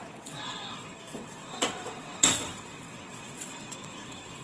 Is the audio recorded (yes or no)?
no